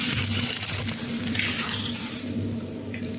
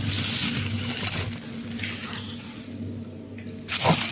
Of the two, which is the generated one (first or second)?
first